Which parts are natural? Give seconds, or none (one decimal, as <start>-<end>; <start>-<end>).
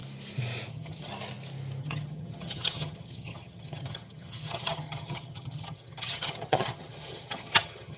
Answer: 0.0-0.7; 1.1-1.8